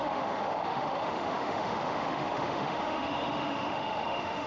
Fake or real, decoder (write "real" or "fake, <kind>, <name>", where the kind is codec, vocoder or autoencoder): fake, autoencoder, DAC-VAE